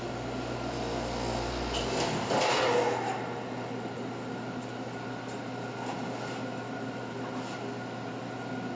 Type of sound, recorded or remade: recorded